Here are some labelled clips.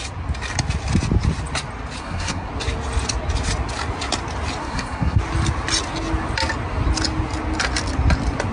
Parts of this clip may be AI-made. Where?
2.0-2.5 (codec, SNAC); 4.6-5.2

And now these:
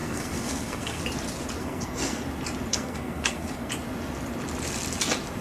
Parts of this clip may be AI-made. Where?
0.0-1.0 (codec, SNAC); 1.6-2.2; 2.7-3.7

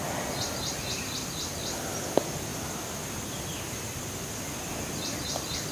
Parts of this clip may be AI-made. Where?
none

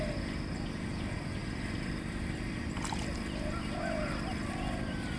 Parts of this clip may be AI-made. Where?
none

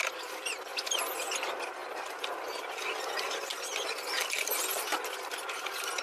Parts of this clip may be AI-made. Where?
none

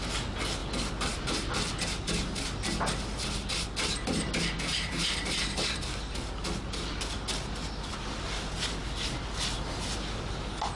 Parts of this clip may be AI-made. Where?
none

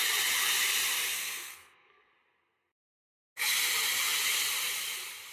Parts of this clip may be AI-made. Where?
1.2-2.1 (codec, SNAC)

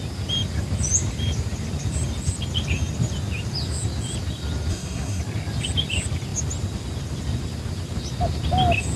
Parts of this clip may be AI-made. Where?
4.7-5.2 (codec, SNAC)